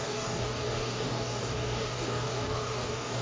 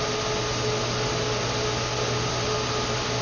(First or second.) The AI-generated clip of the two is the first